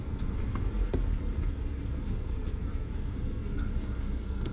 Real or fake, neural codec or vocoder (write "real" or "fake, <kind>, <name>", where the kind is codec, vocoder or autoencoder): fake, codec, SNAC